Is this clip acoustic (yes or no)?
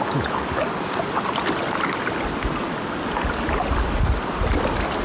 yes